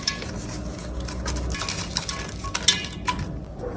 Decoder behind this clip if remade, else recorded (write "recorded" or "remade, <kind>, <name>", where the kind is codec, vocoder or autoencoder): recorded